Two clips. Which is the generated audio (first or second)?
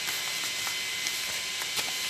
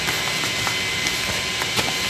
second